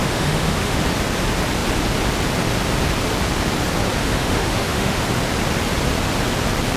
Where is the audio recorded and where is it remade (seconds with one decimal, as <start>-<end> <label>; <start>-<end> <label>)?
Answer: 0.0-0.8 remade; 0.8-4.0 recorded; 4.0-5.0 remade; 5.0-6.8 recorded